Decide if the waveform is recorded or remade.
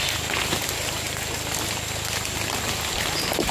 recorded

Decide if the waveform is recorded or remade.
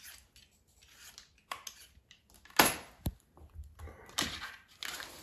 recorded